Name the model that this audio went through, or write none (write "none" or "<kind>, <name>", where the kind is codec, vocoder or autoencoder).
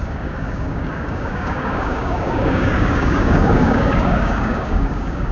codec, DAC